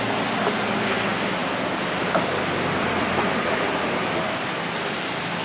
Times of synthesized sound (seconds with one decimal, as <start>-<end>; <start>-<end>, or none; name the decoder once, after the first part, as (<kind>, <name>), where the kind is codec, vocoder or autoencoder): none